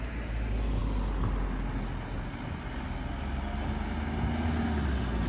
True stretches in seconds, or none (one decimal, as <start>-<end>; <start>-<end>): 0.0-5.3